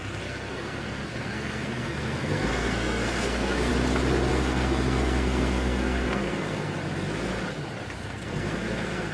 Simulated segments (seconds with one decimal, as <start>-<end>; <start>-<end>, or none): 0.0-3.7; 4.3-6.8; 8.0-9.1